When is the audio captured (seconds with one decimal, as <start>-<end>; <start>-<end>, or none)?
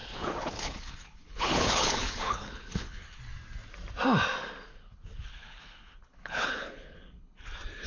3.2-4.7; 7.4-7.9